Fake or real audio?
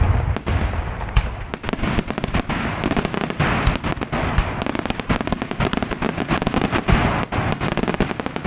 real